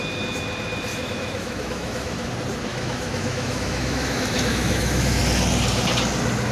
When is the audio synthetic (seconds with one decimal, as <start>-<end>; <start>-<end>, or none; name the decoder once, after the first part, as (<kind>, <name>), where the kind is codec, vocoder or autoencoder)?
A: 0.9-2.3 (autoencoder, DAC-VAE); 2.7-5.2